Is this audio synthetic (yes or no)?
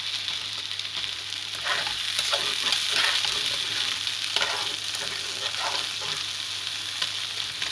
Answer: no